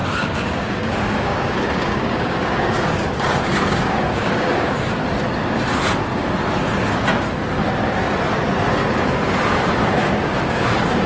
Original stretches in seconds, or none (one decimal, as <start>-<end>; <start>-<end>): 5.0-10.0